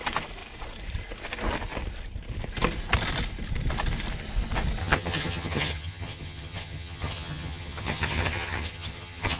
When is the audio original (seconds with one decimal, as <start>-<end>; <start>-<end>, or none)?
0.0-4.8